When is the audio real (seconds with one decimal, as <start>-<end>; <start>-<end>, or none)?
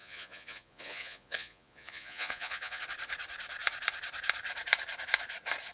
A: 2.8-5.7